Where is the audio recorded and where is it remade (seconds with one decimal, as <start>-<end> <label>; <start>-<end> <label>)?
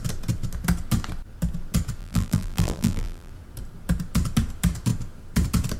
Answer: 0.0-2.0 recorded; 2.0-3.3 remade; 3.3-5.8 recorded